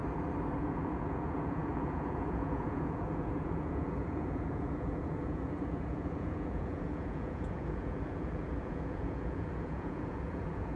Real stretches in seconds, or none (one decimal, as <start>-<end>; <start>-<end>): 0.0-0.6